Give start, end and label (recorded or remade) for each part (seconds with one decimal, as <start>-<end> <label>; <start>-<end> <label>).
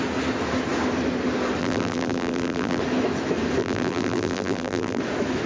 0.0-1.6 recorded; 1.6-2.8 remade; 2.8-3.6 recorded; 3.6-5.0 remade; 5.0-5.5 recorded